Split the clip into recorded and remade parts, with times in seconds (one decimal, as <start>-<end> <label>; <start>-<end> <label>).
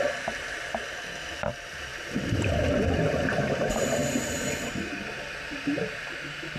0.0-6.6 recorded